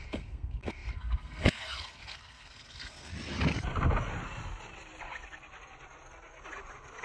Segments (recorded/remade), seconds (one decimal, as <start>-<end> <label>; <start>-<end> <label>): 0.0-3.1 remade; 3.1-7.0 recorded